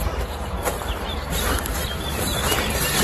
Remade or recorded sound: remade